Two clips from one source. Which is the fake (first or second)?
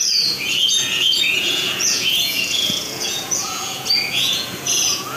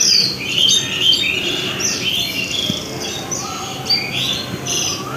first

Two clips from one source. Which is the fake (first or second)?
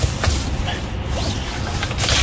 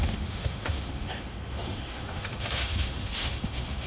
second